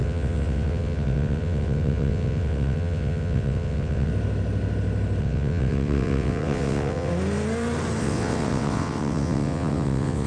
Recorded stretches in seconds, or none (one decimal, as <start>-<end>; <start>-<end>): 4.1-5.2; 7.1-8.0